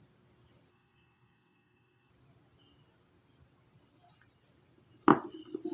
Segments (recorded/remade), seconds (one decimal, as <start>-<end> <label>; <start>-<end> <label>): 0.0-0.7 recorded; 0.7-2.1 remade; 2.1-5.7 recorded